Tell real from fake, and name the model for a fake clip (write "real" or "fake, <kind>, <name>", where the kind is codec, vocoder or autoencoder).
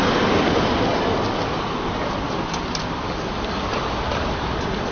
real